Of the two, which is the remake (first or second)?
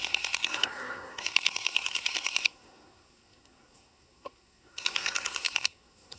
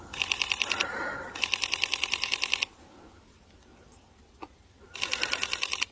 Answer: first